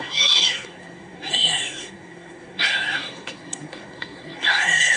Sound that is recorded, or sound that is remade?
remade